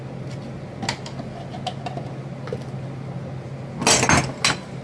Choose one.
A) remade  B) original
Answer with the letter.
B